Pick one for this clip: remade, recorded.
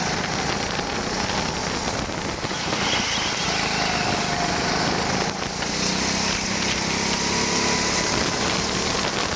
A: recorded